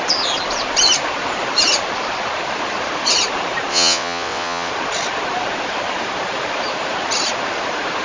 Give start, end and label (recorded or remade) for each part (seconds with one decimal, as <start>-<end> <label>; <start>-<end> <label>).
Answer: 0.0-3.7 recorded; 3.7-4.7 remade; 4.7-8.0 recorded